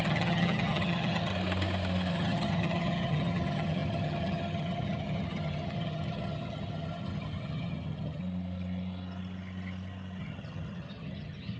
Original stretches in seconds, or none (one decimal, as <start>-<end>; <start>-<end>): 1.3-2.1; 8.2-10.2